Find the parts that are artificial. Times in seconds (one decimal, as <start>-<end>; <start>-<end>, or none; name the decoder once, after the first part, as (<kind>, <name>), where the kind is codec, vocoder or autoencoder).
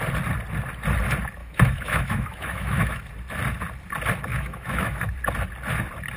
1.4-3.0 (autoencoder, DAC-VAE); 4.3-5.1